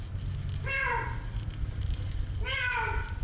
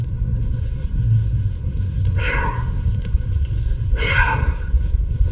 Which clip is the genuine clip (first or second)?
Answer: first